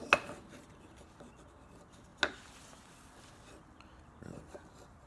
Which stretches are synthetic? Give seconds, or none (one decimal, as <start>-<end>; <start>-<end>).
none